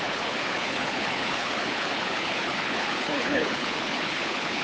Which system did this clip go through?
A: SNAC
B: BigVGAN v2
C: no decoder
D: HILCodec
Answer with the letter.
D